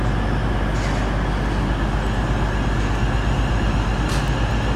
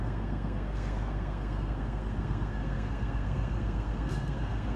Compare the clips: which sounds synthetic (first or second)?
second